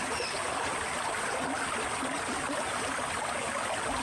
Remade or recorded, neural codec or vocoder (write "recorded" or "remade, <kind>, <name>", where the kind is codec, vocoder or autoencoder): recorded